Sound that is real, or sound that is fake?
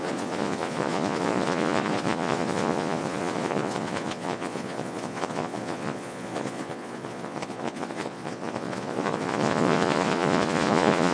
fake